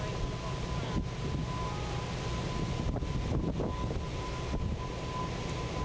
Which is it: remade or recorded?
recorded